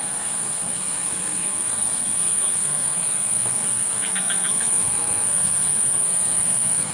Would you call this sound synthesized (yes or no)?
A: yes